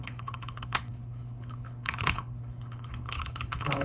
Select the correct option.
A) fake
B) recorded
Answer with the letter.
A